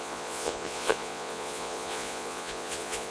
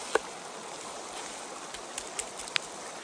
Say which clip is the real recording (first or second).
second